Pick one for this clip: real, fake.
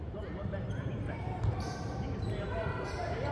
fake